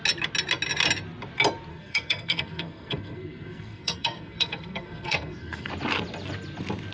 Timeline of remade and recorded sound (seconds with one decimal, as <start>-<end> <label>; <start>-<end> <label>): 0.0-1.7 recorded; 1.7-5.7 remade; 5.7-6.9 recorded